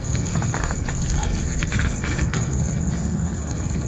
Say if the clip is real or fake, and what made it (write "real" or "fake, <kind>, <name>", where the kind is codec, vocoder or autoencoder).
fake, codec, SNAC